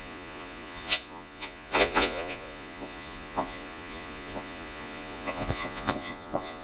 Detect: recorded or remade remade